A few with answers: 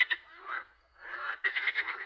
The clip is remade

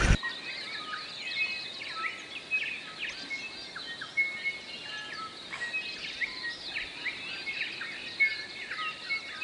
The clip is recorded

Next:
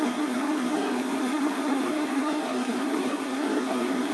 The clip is remade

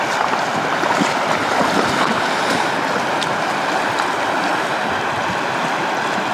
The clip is recorded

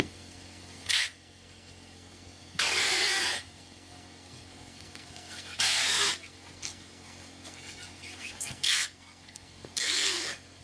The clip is remade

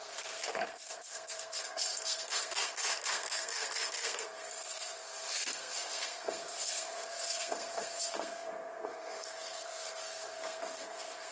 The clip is remade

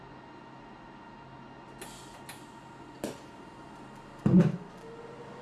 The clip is recorded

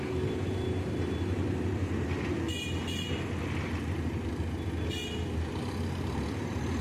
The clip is recorded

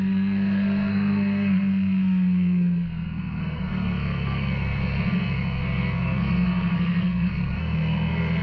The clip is remade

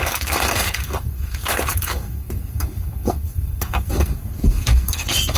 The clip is remade